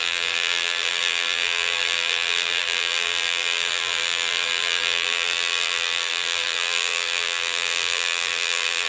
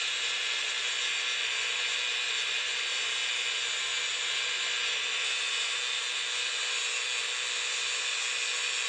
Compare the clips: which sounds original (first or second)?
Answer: second